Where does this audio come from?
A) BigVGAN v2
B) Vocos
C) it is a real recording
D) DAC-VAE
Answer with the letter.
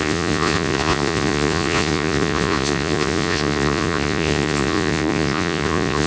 B